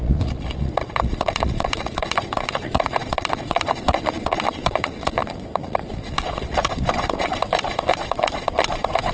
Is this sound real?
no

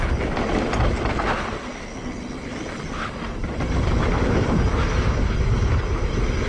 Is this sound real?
yes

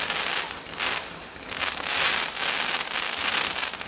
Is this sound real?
yes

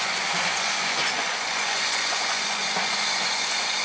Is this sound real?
no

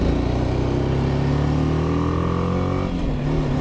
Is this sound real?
yes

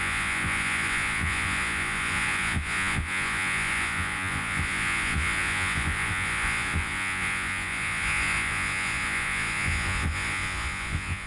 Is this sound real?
no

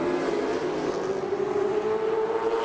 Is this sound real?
yes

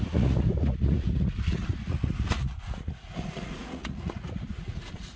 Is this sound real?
no